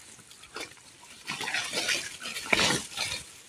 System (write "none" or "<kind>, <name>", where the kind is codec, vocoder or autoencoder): none